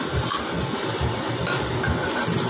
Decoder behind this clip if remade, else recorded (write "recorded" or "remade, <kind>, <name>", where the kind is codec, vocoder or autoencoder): recorded